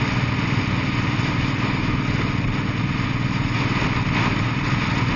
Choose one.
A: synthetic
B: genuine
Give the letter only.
B